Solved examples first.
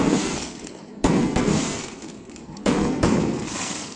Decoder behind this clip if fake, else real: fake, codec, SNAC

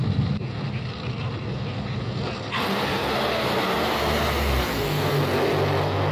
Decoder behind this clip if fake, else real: real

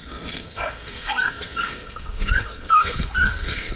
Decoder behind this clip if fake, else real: fake, codec, SNAC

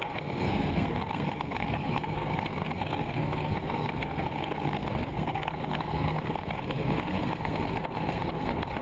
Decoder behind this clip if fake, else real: fake, codec, SNAC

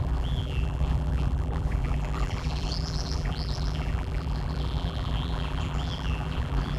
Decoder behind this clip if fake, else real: fake, vocoder, BigVGAN v2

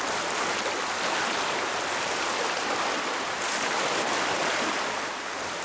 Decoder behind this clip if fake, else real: real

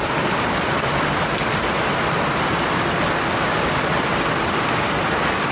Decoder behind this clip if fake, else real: real